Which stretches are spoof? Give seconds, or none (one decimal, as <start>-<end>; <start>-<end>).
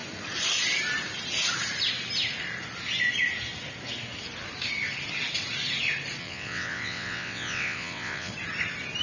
6.2-8.3